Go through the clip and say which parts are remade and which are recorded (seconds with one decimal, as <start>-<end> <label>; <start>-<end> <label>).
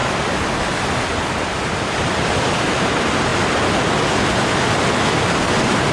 0.0-5.9 recorded